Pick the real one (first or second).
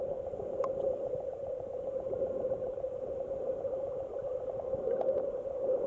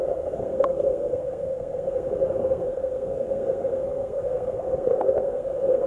first